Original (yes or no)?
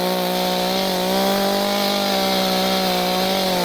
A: yes